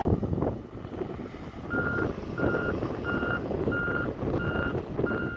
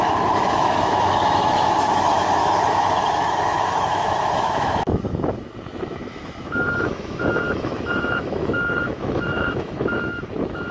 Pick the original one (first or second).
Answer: first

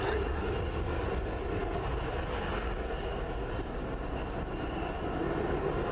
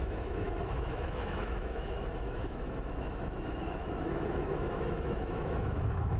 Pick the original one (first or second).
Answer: first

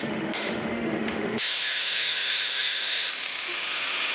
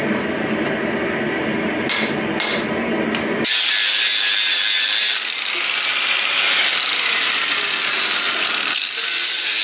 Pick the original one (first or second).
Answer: second